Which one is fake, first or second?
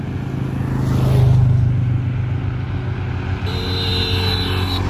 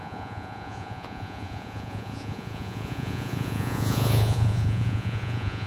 second